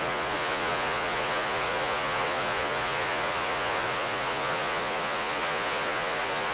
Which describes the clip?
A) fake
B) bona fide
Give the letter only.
A